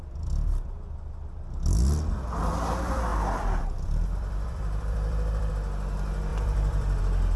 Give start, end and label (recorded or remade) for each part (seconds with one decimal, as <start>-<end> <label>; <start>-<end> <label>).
0.0-3.1 recorded; 3.1-5.5 remade; 5.5-6.3 recorded; 6.3-7.0 remade; 7.0-7.4 recorded